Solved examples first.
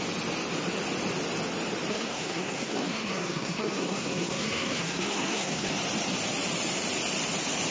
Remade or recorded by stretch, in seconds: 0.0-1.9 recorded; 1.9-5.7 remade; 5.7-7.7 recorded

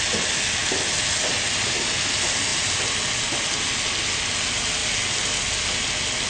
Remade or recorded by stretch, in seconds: 0.0-6.3 recorded

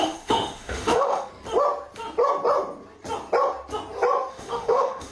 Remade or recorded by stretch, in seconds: 0.0-1.3 remade; 1.3-4.3 recorded; 4.3-5.1 remade